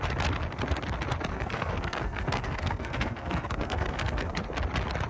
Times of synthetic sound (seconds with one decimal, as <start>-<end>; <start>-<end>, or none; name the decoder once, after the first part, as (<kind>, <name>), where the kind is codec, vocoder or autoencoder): 1.3-4.4 (codec, SNAC)